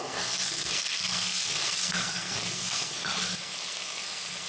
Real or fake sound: fake